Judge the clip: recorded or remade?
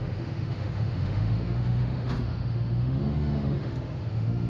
remade